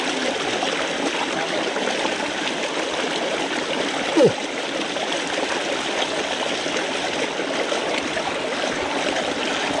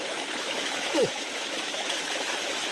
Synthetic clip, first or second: second